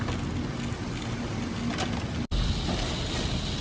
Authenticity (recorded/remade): recorded